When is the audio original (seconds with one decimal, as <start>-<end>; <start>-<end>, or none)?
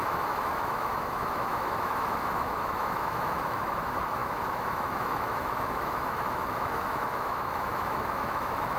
none